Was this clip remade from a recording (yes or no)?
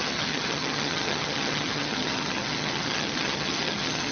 yes